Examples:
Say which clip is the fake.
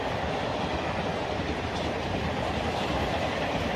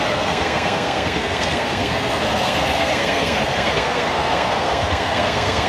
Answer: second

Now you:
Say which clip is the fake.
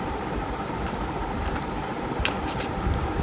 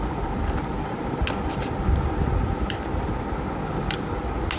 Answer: first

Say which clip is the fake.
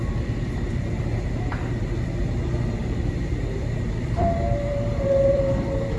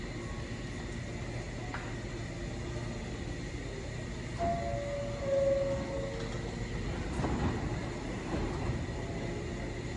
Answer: first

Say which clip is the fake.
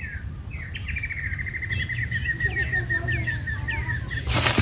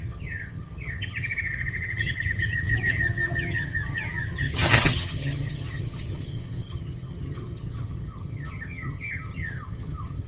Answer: second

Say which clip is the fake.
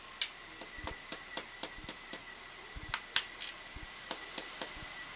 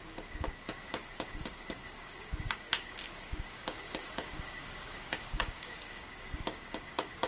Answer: second